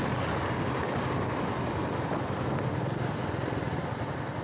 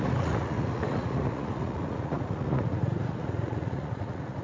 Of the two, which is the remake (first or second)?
second